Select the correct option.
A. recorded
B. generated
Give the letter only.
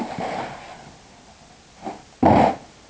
A